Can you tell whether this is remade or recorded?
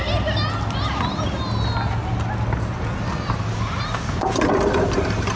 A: recorded